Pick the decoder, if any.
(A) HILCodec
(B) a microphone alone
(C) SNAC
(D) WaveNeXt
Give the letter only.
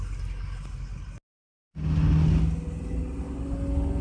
B